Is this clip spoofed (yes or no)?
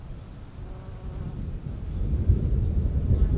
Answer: no